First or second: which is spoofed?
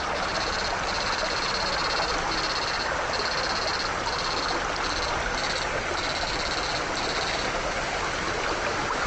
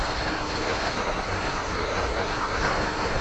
second